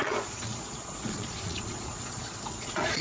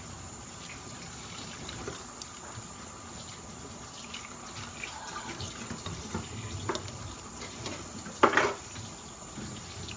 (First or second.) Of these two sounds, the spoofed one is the first